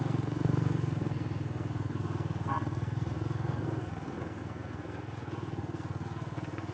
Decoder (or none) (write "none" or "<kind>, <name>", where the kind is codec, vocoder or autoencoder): codec, SNAC